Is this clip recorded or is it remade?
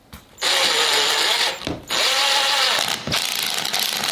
recorded